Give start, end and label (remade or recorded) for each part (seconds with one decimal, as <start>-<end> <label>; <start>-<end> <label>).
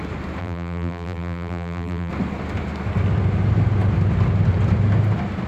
0.0-0.4 recorded; 0.4-2.1 remade; 2.1-5.5 recorded